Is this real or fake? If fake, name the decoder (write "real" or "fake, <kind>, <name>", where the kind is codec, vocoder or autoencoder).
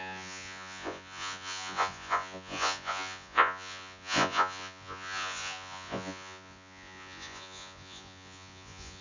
fake, vocoder, Vocos